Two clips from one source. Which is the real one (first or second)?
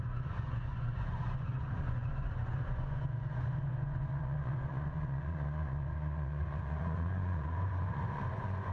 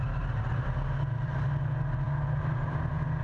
second